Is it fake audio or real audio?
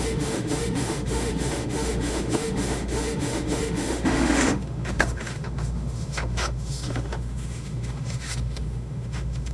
fake